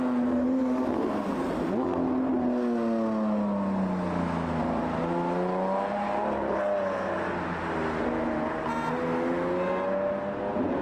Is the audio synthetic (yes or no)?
no